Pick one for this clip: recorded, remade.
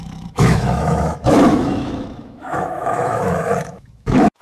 remade